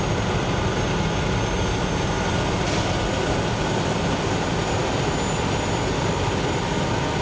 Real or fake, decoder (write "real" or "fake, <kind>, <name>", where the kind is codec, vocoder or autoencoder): real